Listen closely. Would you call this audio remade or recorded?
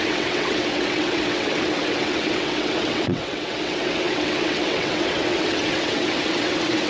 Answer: remade